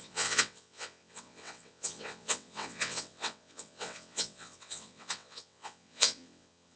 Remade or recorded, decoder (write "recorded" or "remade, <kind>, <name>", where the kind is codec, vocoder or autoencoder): remade, vocoder, WaveNeXt